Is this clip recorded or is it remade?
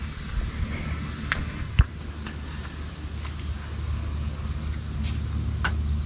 recorded